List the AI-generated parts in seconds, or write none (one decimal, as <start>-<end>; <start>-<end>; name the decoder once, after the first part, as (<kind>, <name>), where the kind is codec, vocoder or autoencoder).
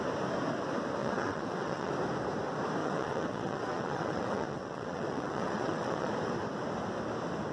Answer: 1.0-1.9 (vocoder, WaveNeXt); 2.8-6.1